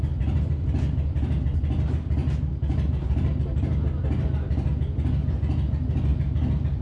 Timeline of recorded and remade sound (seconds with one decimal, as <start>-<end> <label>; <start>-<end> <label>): 0.0-6.8 recorded